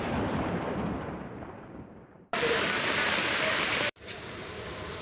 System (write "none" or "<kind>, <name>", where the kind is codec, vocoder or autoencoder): vocoder, BigVGAN v2